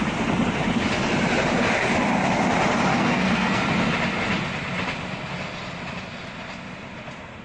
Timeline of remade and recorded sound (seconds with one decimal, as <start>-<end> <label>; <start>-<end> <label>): 0.0-2.9 recorded; 2.9-3.6 remade; 3.6-7.4 recorded